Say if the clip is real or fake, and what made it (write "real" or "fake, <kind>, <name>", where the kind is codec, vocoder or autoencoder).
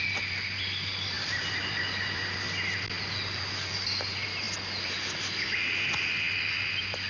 real